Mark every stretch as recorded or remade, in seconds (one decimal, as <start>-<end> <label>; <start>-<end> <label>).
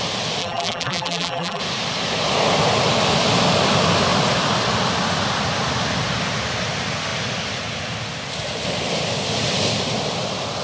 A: 0.0-0.4 recorded; 0.4-1.6 remade; 1.6-10.6 recorded